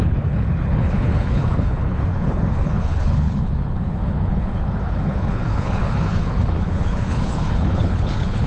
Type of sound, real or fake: fake